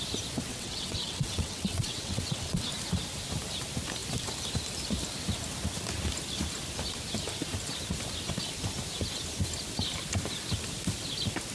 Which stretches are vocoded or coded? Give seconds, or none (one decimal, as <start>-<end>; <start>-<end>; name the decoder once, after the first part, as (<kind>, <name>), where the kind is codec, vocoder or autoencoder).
0.5-2.7 (vocoder, WaveNeXt)